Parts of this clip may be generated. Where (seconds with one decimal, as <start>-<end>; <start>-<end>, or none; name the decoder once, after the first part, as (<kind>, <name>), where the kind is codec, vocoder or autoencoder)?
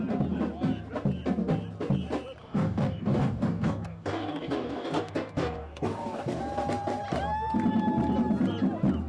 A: 2.4-6.4 (codec, DAC)